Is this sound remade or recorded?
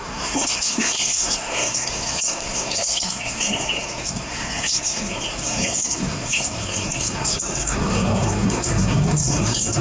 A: remade